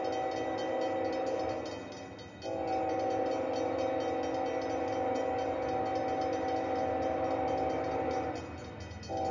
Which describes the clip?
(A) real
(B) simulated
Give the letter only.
A